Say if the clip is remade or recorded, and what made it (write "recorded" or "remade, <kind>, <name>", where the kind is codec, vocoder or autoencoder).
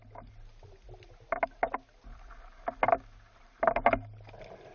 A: recorded